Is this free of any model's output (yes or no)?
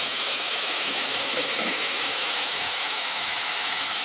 no